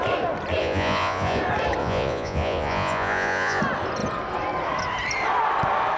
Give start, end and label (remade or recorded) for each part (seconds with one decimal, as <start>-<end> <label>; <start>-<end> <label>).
0.0-0.6 recorded; 0.6-1.4 remade; 1.4-1.8 recorded; 1.8-3.6 remade; 3.6-6.0 recorded